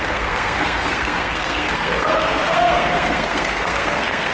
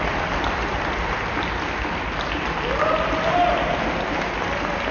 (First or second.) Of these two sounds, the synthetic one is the first